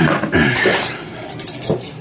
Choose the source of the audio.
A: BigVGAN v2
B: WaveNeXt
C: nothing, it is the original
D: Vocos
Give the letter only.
A